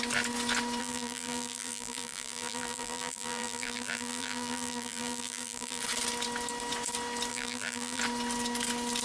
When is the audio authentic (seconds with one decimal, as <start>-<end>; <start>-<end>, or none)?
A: 0.0-0.8; 5.8-7.3; 8.0-9.0